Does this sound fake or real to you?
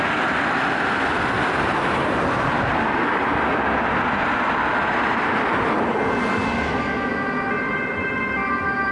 real